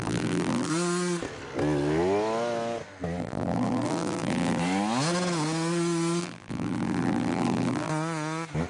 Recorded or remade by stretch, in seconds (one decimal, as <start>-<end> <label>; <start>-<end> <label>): 0.0-0.7 remade; 0.7-3.2 recorded; 3.2-4.6 remade; 4.6-6.2 recorded; 6.2-7.9 remade; 7.9-8.7 recorded